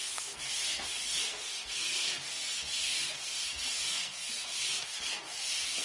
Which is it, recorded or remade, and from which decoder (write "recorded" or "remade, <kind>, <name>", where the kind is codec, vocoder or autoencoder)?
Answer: remade, codec, SNAC